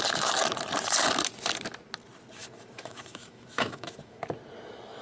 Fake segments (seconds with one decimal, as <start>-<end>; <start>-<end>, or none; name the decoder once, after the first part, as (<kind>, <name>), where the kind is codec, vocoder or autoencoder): 2.4-4.2 (autoencoder, DAC-VAE)